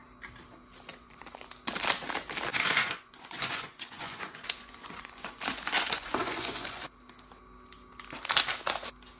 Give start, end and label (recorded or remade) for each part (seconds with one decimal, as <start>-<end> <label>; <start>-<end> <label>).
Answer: 0.0-0.9 recorded; 0.9-1.5 remade; 1.5-2.5 recorded; 2.5-6.8 remade; 6.8-9.2 recorded